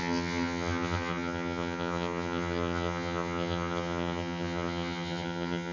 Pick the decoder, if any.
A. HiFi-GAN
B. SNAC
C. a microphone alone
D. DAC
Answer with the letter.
A